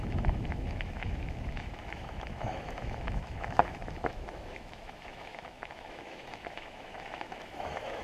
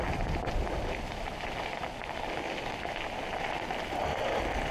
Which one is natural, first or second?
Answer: second